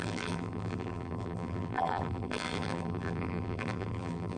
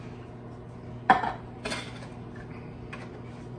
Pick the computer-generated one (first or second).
first